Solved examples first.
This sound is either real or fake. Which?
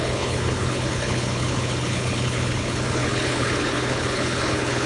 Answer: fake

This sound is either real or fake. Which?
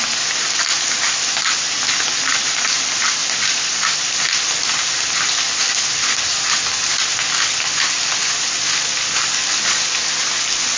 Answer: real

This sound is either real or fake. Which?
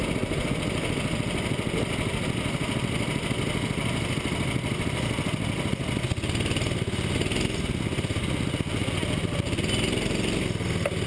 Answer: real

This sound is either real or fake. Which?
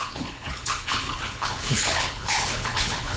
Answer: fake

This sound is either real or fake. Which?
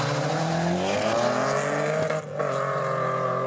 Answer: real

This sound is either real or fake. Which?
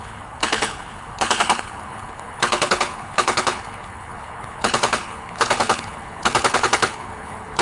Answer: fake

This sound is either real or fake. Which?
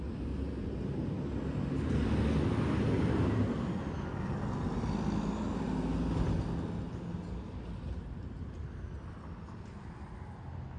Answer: real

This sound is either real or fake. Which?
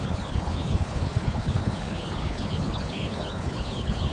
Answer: fake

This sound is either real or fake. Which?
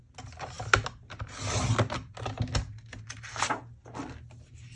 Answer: real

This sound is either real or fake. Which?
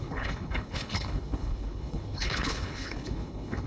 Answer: fake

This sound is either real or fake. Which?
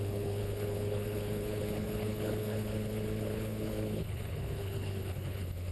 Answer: fake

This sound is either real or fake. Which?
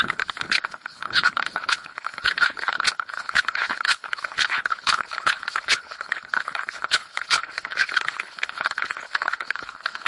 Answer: fake